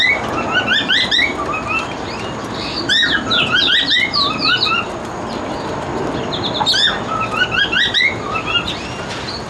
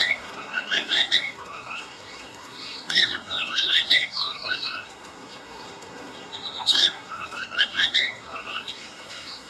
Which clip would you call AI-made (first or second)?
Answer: second